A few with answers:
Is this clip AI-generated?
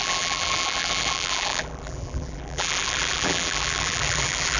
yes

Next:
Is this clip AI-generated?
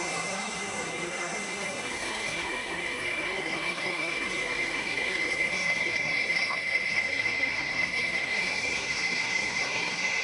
yes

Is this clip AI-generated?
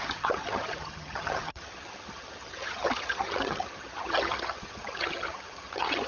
yes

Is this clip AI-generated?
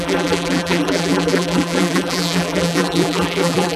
yes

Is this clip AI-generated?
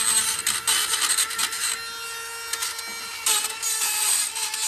no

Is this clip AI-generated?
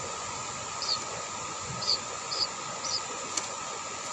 yes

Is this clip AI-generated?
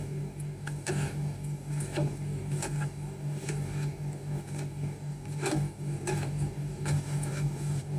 yes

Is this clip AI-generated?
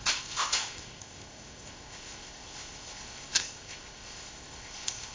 yes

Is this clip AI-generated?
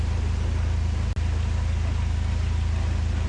no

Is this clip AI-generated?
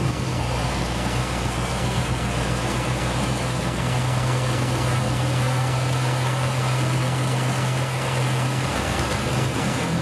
yes